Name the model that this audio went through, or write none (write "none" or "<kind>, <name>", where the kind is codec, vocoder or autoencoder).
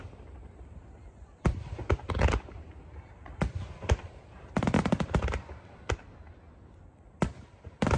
vocoder, BigVGAN v2